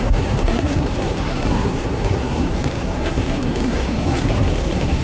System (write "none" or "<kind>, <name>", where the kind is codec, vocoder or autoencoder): codec, SNAC